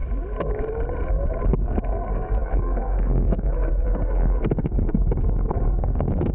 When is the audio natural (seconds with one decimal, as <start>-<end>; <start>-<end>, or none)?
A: 0.0-1.5